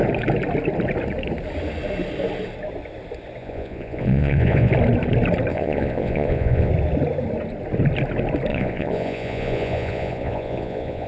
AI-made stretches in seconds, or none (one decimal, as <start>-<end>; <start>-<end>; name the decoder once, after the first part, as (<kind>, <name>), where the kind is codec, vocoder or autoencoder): 3.4-4.7 (vocoder, Vocos); 5.5-6.7; 8.5-11.1